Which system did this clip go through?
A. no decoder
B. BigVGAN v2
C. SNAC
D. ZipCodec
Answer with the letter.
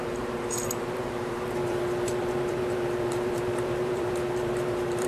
B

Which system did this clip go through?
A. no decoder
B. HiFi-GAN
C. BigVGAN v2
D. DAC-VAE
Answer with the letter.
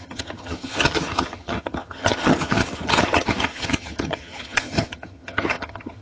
B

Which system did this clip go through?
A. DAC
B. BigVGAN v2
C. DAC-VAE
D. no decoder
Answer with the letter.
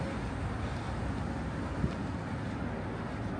D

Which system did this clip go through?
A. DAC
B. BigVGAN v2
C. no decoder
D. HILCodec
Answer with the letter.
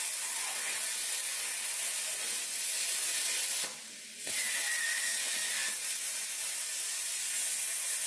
C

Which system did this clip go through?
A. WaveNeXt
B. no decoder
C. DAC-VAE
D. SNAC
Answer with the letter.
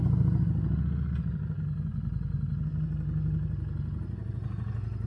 B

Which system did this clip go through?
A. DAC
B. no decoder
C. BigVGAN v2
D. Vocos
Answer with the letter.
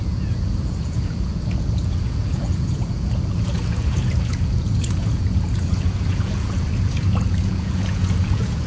D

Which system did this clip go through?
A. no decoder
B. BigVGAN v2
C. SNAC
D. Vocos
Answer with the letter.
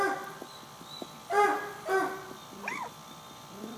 A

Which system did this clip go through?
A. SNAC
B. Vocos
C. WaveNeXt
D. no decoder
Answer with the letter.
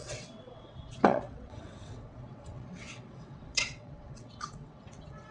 C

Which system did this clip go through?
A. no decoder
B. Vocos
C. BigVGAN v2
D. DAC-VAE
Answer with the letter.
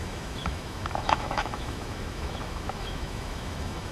D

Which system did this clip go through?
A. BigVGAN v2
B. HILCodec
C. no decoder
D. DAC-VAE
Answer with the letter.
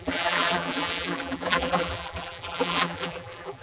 A